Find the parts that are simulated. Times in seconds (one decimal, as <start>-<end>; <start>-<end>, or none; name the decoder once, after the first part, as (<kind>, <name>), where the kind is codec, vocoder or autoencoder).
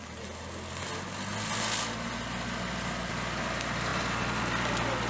none